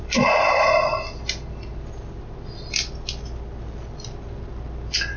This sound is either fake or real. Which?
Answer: real